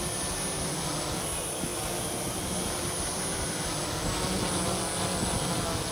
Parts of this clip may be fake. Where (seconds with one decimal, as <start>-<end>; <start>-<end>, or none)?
none